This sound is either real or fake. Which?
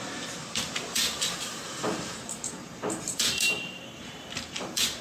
fake